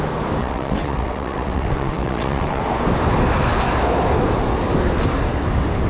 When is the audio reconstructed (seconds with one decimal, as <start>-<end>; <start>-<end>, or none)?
0.4-2.6